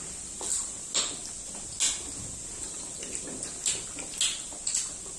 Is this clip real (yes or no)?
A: yes